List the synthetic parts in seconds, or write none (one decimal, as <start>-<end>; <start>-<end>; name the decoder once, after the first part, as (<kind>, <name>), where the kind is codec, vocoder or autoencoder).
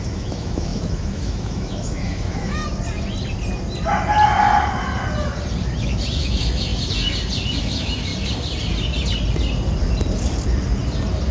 0.0-2.6 (autoencoder, DAC-VAE); 6.2-6.7; 7.6-8.1